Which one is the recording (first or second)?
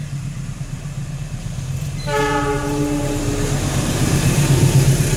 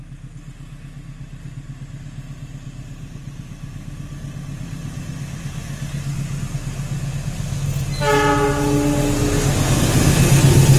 second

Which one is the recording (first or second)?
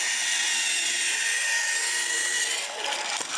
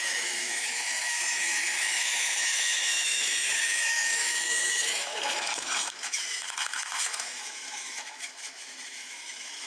first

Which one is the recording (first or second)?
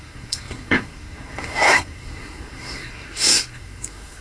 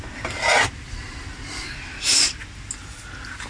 second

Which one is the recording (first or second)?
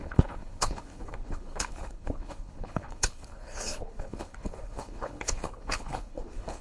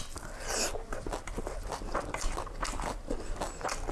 second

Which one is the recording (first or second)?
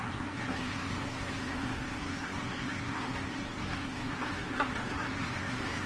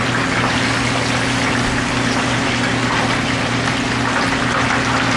second